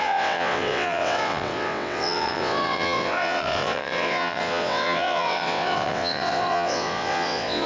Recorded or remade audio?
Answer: remade